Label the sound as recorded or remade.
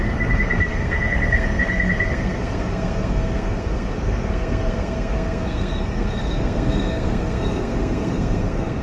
remade